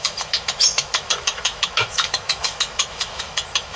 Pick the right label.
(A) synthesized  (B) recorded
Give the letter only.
A